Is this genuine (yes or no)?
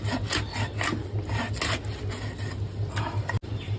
yes